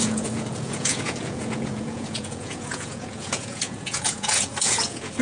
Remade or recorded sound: remade